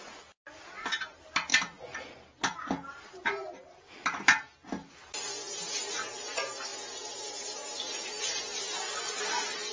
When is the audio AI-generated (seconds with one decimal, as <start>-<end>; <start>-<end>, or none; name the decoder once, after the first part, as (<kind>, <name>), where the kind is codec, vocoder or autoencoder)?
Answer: none